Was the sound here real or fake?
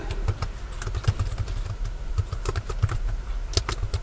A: real